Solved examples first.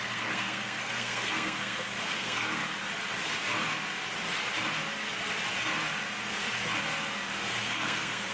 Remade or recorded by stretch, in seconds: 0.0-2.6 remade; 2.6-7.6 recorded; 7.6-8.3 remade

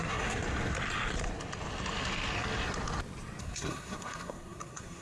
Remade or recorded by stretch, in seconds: 0.0-0.4 remade; 0.4-3.4 recorded; 3.4-5.0 remade

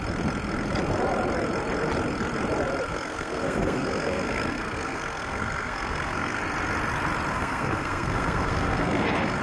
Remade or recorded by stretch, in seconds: 0.0-2.9 recorded; 2.9-6.4 remade; 6.4-7.3 recorded; 7.3-9.4 remade

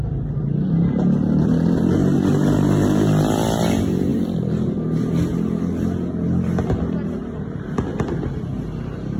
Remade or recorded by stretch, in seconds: 0.0-9.2 recorded

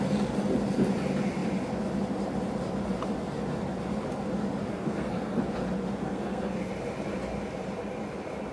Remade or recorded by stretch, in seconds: 0.0-4.7 recorded; 4.7-5.4 remade; 5.4-6.0 recorded; 6.0-6.7 remade; 6.7-8.5 recorded

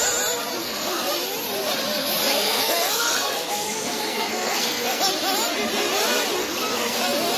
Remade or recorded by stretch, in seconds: 0.0-0.6 recorded; 0.6-1.1 remade; 1.1-2.3 recorded; 2.3-5.0 remade; 5.0-6.4 recorded; 6.4-7.0 remade; 7.0-7.4 recorded

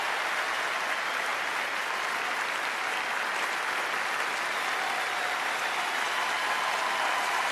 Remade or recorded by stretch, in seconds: 0.0-7.5 recorded

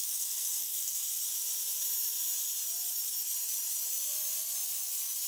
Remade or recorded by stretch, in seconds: 0.0-1.0 remade; 1.0-5.3 recorded